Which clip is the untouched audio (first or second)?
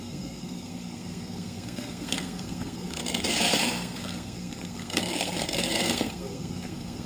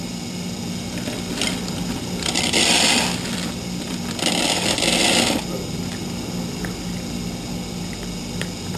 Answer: second